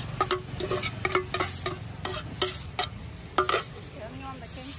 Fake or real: real